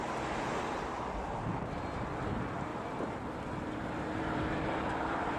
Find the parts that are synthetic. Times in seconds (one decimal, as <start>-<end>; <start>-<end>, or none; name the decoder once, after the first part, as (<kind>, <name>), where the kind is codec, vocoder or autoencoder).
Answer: 2.0-2.7 (vocoder, BigVGAN v2); 3.8-5.4